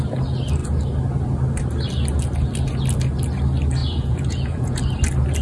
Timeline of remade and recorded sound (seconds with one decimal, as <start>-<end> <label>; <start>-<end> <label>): 0.0-3.8 recorded; 3.8-4.8 remade; 4.8-5.4 recorded